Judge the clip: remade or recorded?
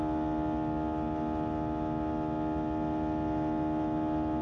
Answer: recorded